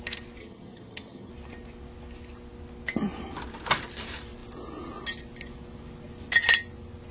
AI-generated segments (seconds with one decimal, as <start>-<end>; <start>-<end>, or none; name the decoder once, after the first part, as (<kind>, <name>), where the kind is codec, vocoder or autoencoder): 0.4-1.3 (vocoder, HiFi-GAN)